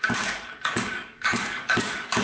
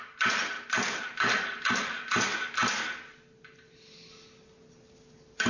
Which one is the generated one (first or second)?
first